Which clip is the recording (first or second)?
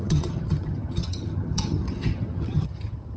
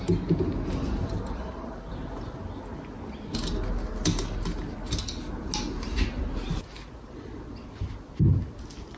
second